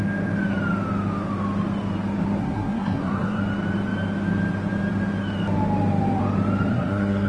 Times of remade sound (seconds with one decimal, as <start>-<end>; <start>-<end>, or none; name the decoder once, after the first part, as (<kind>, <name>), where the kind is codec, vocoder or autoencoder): 2.4-3.4 (codec, SNAC); 6.7-7.3